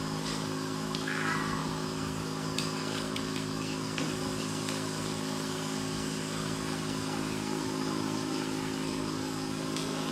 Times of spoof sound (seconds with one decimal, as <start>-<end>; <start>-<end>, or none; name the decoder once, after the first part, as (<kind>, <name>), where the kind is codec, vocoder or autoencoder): 0.0-10.1 (codec, SNAC)